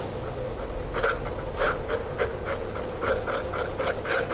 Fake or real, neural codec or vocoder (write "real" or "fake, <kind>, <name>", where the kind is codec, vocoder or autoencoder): real